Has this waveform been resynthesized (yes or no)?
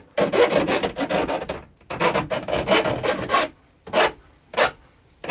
no